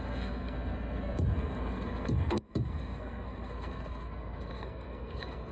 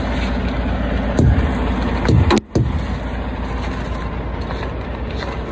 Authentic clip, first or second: second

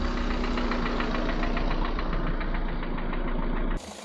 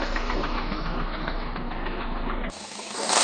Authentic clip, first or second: first